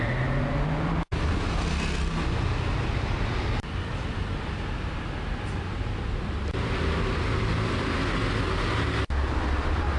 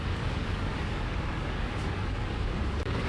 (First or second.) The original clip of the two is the first